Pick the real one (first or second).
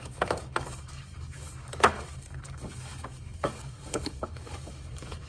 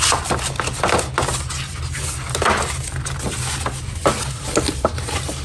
second